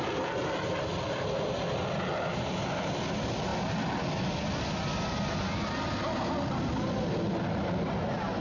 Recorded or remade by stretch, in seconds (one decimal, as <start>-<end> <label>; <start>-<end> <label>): 0.0-8.4 recorded